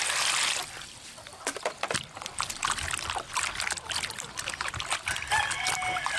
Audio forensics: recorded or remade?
recorded